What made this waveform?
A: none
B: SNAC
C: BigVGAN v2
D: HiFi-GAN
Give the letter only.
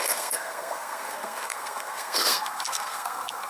B